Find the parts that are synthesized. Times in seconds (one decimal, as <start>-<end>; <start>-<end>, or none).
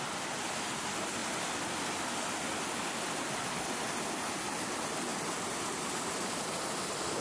none